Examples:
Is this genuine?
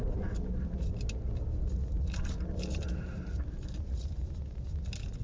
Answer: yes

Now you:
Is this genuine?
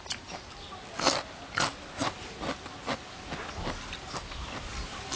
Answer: yes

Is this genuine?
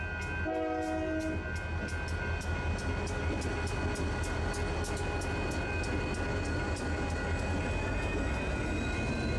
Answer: yes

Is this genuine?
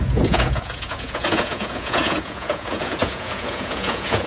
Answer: no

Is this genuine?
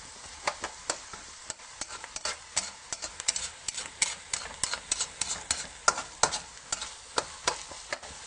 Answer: yes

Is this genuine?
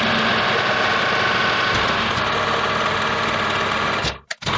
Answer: yes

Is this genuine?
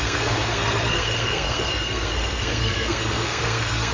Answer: no